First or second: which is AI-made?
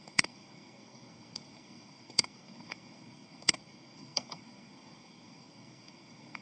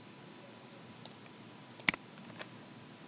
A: first